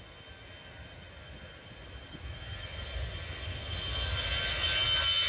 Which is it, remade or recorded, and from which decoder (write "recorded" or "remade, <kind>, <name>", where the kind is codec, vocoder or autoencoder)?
recorded